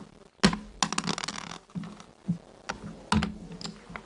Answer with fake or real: real